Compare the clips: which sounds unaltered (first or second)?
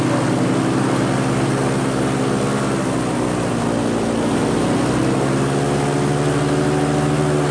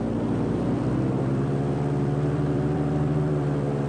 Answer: first